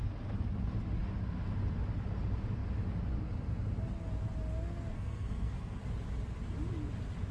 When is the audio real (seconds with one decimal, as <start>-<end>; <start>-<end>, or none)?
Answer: 0.0-4.9; 5.8-7.3